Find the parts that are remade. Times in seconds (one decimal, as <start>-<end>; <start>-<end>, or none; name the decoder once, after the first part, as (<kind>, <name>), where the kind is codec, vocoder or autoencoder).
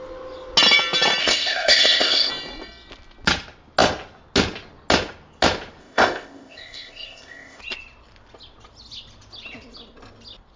1.2-2.3 (codec, ZipCodec); 5.8-7.6